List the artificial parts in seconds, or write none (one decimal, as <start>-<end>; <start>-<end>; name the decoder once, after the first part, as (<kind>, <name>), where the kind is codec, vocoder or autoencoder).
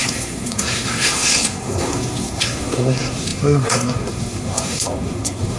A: 0.0-5.6 (codec, SNAC)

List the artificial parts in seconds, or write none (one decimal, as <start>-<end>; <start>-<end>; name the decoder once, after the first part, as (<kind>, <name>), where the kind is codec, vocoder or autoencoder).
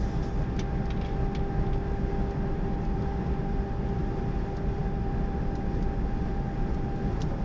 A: none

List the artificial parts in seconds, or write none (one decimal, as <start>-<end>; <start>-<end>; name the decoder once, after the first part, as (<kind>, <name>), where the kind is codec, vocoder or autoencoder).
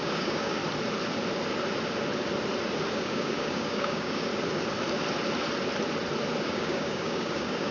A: 0.0-0.6 (codec, DAC); 2.9-4.3; 6.4-7.7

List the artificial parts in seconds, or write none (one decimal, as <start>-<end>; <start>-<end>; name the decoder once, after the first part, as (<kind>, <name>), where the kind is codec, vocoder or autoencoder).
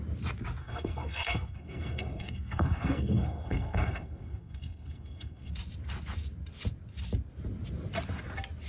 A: 0.6-5.5 (codec, SNAC)